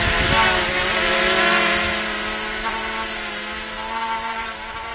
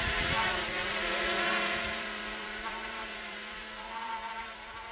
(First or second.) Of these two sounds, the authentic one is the first